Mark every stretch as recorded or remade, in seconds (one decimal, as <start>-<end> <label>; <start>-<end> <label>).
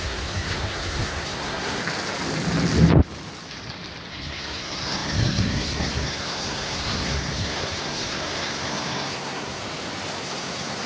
0.0-1.8 remade; 1.8-4.1 recorded; 4.1-9.6 remade; 9.6-10.2 recorded; 10.2-10.9 remade